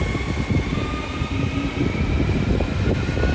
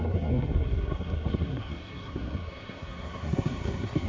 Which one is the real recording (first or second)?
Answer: first